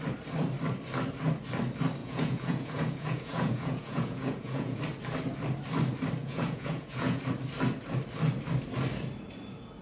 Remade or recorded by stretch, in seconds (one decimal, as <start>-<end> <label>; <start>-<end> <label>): 0.0-2.0 recorded; 2.0-4.8 remade; 4.8-6.2 recorded; 6.2-7.2 remade; 7.2-9.8 recorded